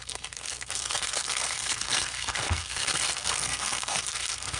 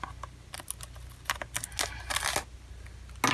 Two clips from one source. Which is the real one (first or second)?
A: second